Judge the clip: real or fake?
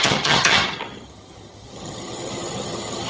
fake